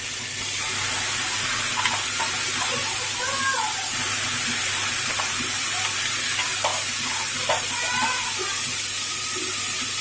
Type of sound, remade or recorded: recorded